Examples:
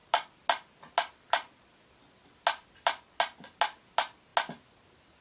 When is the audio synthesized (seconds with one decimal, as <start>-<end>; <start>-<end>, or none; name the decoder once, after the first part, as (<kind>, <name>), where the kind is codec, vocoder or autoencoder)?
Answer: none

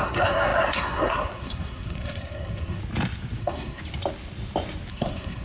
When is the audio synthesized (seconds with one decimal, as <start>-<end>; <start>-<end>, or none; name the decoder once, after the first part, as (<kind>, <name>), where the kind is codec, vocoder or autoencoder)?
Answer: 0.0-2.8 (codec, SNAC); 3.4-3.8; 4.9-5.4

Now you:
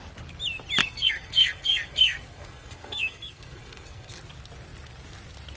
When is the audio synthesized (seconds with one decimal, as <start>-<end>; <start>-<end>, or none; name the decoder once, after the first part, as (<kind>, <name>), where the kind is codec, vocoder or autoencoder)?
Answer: 0.8-4.2 (codec, SNAC)